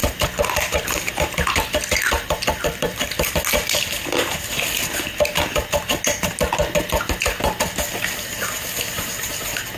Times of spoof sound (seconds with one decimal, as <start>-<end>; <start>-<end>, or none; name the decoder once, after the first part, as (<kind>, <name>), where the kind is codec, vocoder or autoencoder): 0.0-3.3 (vocoder, BigVGAN v2)